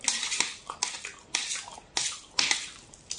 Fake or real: real